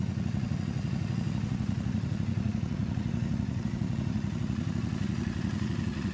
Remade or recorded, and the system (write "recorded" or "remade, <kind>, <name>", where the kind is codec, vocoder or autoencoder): remade, vocoder, Vocos